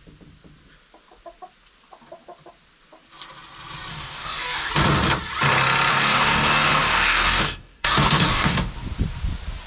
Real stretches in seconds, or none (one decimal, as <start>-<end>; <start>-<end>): 0.0-3.9; 4.7-5.9; 8.7-9.7